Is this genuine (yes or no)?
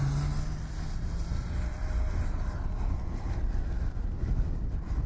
yes